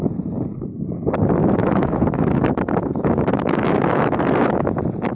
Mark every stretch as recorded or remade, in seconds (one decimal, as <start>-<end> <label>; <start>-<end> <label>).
0.0-1.6 recorded; 1.6-4.7 remade; 4.7-5.2 recorded